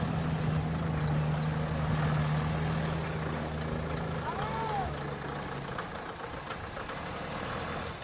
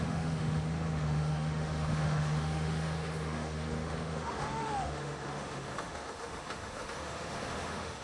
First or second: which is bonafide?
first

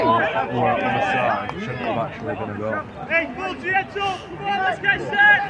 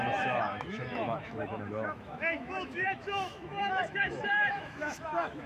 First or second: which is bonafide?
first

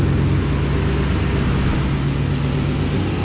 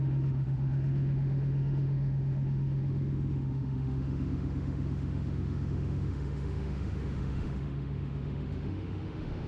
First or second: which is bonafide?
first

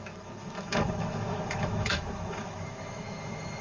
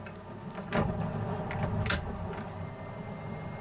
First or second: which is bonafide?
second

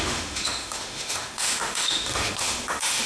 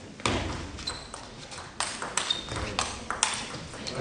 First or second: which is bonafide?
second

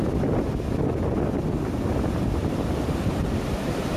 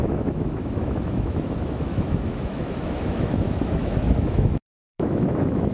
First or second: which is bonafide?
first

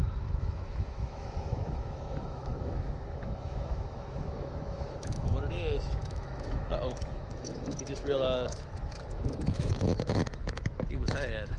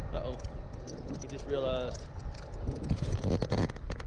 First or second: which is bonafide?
second